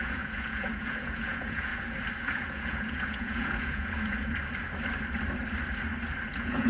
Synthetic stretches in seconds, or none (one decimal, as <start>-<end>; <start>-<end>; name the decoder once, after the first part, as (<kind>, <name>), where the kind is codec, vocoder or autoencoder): 0.0-1.7 (vocoder, Vocos); 2.2-4.4; 6.3-6.7